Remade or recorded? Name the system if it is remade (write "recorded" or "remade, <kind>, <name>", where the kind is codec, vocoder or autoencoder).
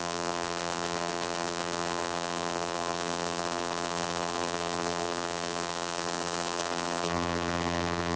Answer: remade, vocoder, BigVGAN v2